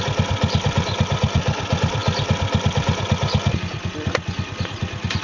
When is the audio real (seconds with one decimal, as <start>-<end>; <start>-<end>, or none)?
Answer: 0.0-5.2